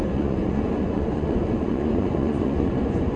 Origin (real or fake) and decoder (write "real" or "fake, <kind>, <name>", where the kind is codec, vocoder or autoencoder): fake, vocoder, Vocos